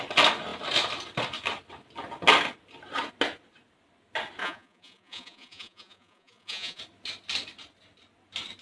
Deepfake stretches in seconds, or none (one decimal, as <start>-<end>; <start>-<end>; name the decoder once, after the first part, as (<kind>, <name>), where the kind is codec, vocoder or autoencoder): 4.4-6.8 (vocoder, Vocos)